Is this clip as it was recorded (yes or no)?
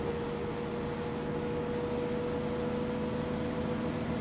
yes